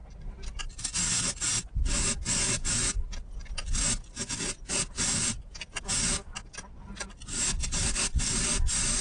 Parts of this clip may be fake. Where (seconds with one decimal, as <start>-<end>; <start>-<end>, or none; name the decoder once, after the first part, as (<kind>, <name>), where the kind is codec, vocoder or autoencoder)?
none